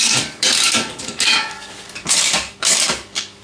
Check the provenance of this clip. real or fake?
fake